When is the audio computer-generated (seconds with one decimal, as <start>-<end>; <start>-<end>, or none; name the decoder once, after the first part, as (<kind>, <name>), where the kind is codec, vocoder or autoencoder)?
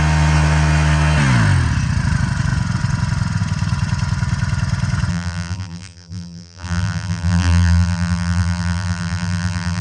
5.1-9.8 (vocoder, BigVGAN v2)